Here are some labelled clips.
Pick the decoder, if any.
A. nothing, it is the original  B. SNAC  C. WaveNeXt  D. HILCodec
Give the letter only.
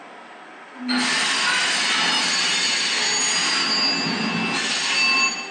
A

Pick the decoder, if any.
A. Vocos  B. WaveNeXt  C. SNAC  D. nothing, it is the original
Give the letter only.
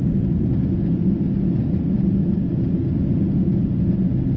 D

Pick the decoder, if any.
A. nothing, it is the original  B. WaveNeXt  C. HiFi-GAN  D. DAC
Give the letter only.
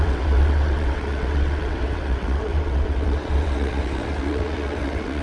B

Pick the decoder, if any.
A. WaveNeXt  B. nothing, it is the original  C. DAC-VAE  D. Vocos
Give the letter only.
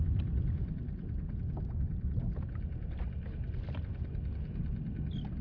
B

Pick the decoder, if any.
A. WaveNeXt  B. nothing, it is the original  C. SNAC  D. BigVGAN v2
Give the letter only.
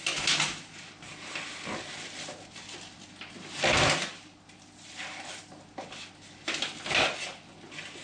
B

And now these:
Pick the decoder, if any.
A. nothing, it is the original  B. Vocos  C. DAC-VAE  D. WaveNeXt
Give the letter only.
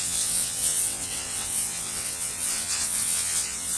D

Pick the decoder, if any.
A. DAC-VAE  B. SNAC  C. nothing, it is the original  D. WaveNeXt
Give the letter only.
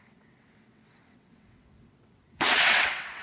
D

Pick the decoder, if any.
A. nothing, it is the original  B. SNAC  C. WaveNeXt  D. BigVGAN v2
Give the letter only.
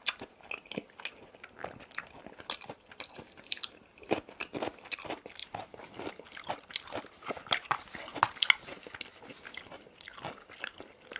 A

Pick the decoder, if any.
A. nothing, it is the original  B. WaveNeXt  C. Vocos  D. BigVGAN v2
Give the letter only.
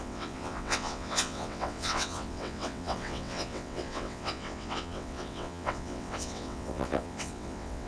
B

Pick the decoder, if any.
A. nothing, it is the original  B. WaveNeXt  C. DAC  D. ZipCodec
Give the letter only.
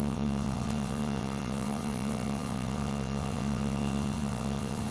B